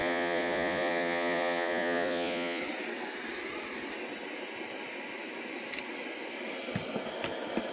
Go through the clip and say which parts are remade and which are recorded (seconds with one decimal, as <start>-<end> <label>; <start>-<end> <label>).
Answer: 0.0-2.6 remade; 2.6-7.7 recorded